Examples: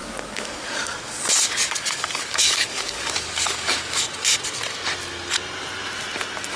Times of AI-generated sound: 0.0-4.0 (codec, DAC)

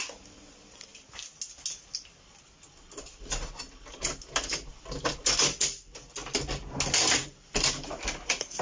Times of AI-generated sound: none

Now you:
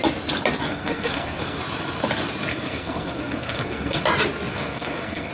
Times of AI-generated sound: 0.7-1.6 (codec, SNAC); 2.5-4.0; 4.5-5.3

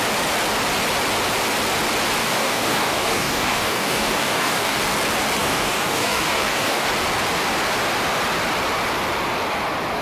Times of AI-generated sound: 2.2-4.8 (codec, DAC); 5.4-6.9

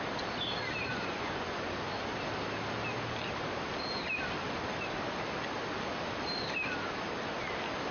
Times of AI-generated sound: 0.9-1.7 (vocoder, Vocos)

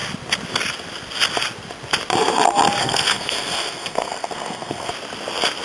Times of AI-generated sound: 2.8-4.9 (codec, SNAC)

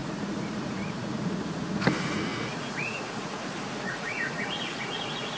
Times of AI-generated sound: 0.0-5.4 (vocoder, Vocos)